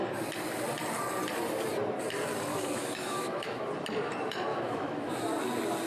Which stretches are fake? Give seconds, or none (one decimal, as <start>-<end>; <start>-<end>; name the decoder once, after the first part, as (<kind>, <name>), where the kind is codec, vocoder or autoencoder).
2.5-3.6 (autoencoder, DAC-VAE); 4.5-5.1